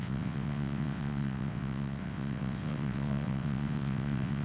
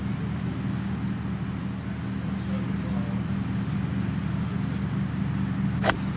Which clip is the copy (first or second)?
first